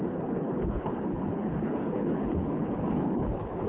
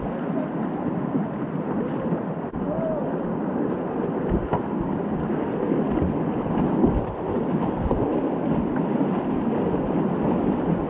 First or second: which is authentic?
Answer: second